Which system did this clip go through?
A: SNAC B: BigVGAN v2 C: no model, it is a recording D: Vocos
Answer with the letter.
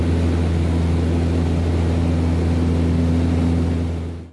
C